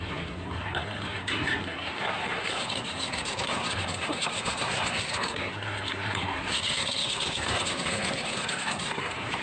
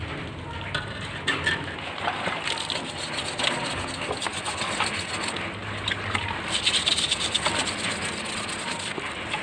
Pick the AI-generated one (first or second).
first